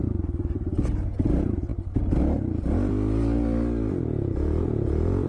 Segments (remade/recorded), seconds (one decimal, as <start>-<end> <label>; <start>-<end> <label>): 0.0-4.1 recorded; 4.1-5.3 remade